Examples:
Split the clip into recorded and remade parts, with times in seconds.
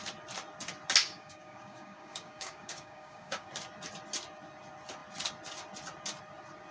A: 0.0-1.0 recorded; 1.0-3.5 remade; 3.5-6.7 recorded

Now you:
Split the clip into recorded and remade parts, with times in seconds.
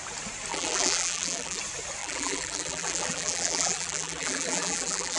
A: 0.0-0.5 recorded; 0.5-1.6 remade; 1.6-2.0 recorded; 2.0-5.2 remade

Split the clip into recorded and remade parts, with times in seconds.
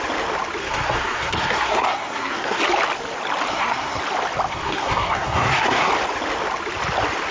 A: 0.0-0.6 recorded; 0.6-2.6 remade; 2.6-3.5 recorded; 3.5-4.0 remade; 4.0-4.5 recorded; 4.5-5.9 remade; 5.9-7.3 recorded